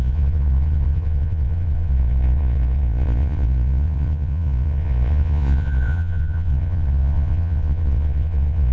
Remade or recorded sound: remade